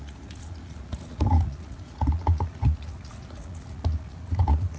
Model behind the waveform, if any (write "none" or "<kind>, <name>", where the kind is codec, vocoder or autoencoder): vocoder, Vocos